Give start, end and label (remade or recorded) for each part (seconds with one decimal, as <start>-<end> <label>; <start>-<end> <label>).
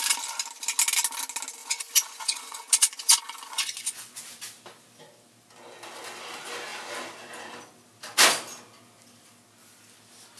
0.0-1.6 recorded; 1.6-4.2 remade; 4.2-10.4 recorded